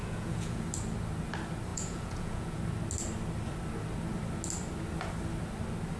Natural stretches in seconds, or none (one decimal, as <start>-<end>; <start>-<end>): 0.6-1.7; 2.6-6.0

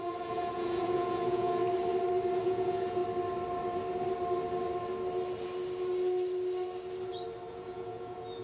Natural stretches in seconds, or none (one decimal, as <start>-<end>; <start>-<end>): 1.6-2.4; 3.0-7.5